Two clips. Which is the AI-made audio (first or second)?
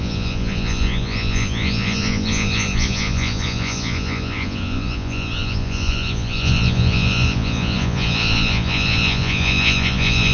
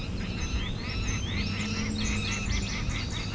first